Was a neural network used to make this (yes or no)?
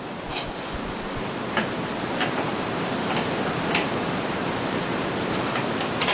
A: yes